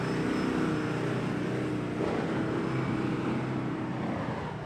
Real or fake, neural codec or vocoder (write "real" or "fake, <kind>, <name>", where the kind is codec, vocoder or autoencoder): real